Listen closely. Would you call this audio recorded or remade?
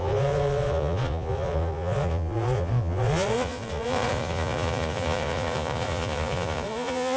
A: remade